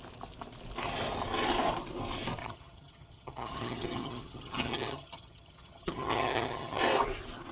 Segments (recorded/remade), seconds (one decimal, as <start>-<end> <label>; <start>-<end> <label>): 0.0-2.4 recorded; 2.4-6.8 remade; 6.8-7.5 recorded